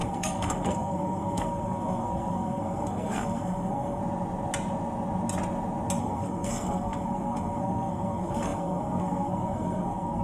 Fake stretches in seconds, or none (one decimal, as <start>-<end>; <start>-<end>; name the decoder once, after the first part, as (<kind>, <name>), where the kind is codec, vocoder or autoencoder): 0.0-4.0 (codec, SNAC); 6.0-10.2